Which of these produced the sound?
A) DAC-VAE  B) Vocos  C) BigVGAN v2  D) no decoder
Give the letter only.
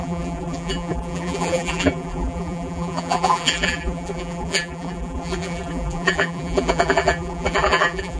C